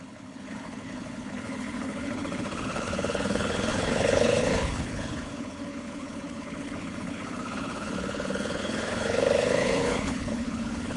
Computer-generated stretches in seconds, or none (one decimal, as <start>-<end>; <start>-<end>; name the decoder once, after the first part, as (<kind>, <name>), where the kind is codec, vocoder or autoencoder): 0.0-11.0 (codec, HILCodec)